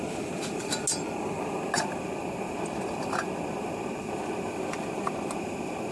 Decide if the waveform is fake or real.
real